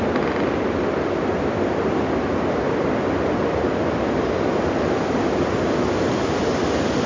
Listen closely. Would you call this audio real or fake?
real